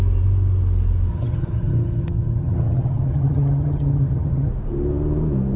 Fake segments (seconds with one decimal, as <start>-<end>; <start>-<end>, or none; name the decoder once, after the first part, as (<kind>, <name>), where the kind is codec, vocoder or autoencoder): 1.1-4.5 (vocoder, HiFi-GAN)